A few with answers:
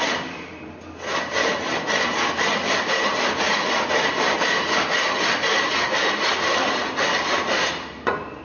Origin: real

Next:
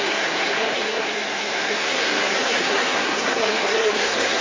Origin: fake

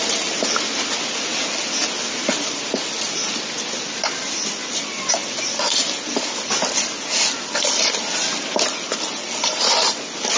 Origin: real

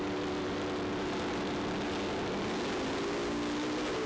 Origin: real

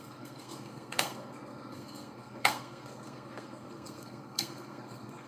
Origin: fake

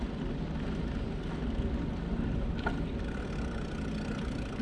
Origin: real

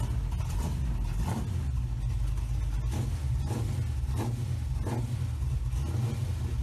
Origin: real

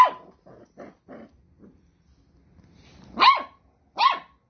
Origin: real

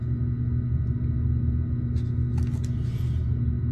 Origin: real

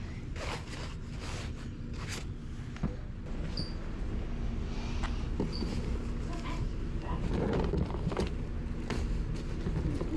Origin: real